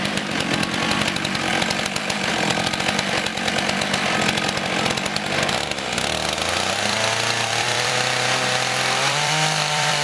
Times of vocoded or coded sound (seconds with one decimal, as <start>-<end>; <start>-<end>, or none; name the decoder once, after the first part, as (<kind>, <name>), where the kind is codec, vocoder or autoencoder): 0.0-1.5 (vocoder, BigVGAN v2); 2.3-3.3; 4.9-10.0